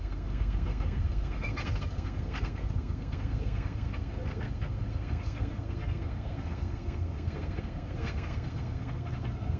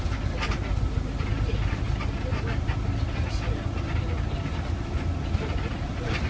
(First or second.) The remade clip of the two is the first